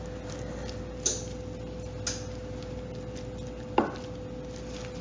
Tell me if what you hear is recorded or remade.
recorded